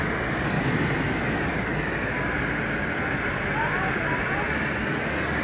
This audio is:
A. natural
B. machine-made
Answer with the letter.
A